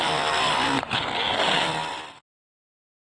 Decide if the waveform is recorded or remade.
recorded